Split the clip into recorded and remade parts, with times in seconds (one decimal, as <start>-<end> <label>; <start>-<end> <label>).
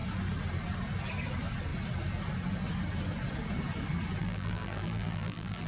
0.0-4.2 recorded; 4.2-5.7 remade